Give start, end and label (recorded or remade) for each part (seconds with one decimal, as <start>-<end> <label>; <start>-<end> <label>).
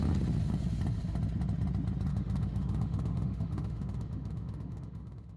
0.0-2.1 recorded; 2.1-5.4 remade